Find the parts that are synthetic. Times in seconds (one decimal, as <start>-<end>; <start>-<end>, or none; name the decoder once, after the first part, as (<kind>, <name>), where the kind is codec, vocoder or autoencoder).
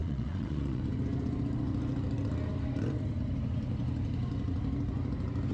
0.0-0.8 (vocoder, Vocos)